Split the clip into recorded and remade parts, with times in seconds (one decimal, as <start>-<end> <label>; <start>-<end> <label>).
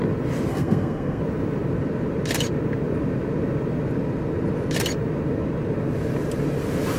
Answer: 0.0-0.5 recorded; 0.5-1.2 remade; 1.2-7.0 recorded